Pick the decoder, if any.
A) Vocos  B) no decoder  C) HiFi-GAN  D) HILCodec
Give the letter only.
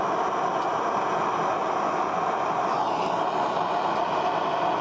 B